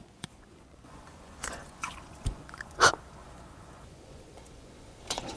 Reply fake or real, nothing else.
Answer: fake